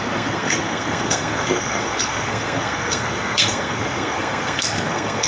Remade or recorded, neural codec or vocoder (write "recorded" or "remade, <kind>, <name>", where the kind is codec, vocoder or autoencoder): remade, codec, SNAC